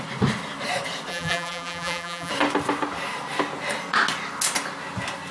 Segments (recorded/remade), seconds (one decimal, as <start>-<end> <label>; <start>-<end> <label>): 0.0-1.1 recorded; 1.1-2.3 remade; 2.3-5.3 recorded